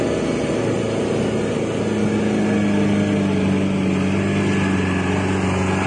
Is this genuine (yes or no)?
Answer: yes